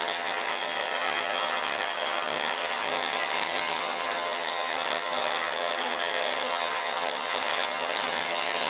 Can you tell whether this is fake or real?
fake